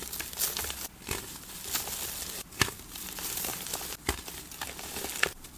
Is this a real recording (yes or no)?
yes